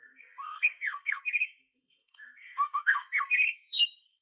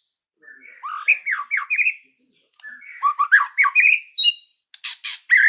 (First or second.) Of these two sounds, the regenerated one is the first